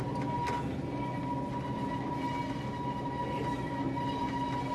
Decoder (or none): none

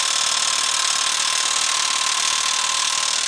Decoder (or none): none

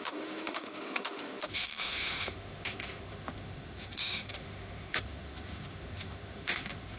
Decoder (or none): autoencoder, DAC-VAE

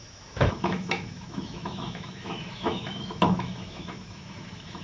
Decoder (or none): autoencoder, DAC-VAE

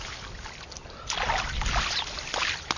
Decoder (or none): none